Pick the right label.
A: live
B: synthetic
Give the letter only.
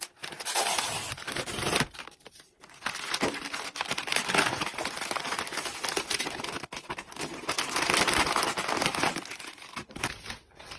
A